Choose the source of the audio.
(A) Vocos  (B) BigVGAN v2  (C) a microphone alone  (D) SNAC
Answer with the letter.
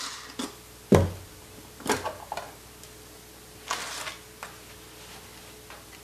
C